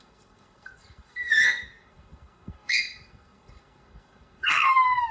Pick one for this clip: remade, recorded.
remade